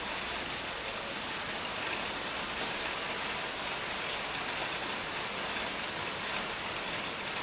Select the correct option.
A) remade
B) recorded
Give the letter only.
B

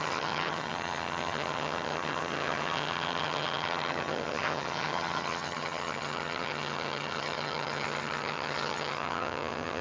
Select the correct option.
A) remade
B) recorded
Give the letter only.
A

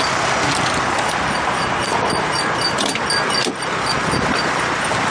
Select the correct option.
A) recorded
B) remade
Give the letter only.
A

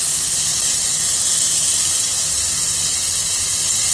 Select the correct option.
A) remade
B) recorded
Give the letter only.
B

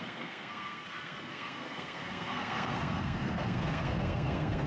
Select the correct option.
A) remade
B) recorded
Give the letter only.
A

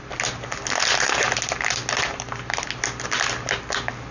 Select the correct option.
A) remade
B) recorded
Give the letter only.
B